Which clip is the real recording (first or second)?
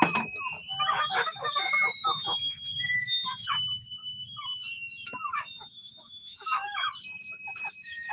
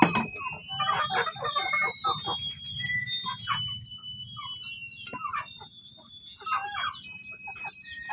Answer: second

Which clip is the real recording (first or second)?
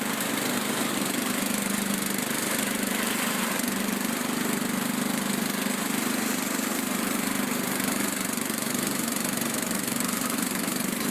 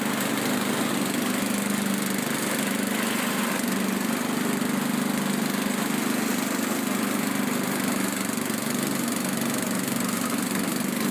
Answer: second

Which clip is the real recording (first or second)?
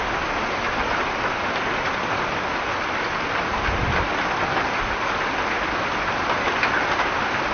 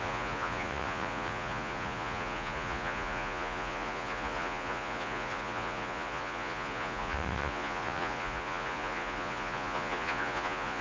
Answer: first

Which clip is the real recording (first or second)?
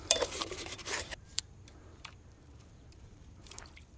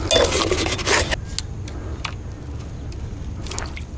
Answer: second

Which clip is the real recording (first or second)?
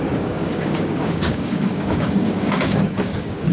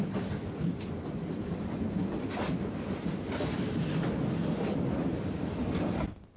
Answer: second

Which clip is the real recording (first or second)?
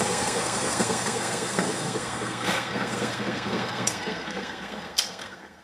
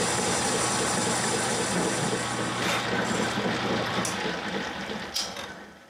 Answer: second